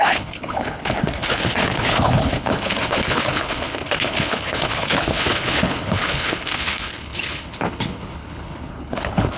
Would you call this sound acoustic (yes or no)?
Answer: no